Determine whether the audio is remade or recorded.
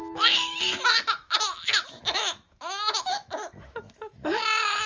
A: remade